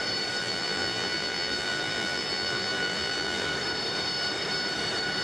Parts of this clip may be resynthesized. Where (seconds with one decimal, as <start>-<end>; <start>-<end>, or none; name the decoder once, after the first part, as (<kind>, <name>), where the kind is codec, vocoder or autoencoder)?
0.4-3.5 (vocoder, BigVGAN v2)